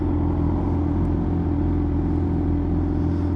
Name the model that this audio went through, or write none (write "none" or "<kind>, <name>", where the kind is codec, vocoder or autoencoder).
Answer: none